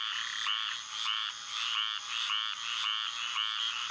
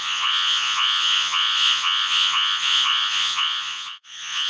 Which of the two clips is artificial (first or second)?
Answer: second